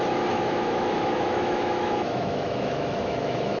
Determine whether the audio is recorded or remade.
remade